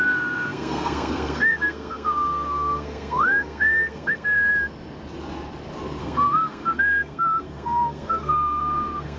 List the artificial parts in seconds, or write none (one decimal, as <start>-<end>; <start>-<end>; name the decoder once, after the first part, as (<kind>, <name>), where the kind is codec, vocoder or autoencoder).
0.0-4.5 (codec, SNAC); 6.0-9.2